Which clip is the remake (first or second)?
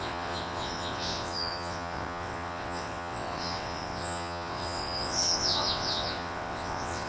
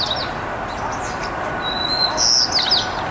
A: first